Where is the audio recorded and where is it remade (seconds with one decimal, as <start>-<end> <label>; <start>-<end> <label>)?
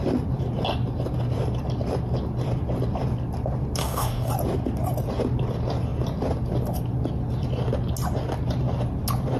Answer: 0.0-3.8 recorded; 3.8-4.3 remade; 4.3-9.4 recorded